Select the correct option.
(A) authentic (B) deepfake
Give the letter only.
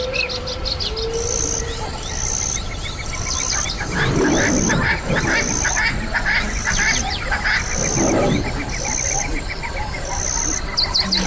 A